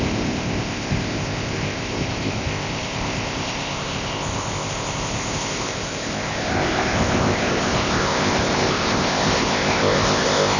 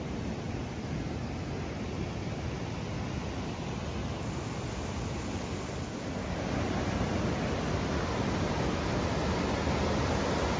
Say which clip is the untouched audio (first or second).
second